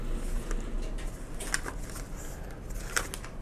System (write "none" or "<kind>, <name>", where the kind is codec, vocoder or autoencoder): none